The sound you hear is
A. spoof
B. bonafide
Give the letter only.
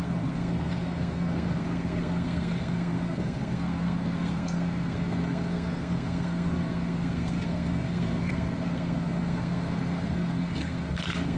A